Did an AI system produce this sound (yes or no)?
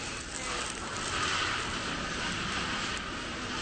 no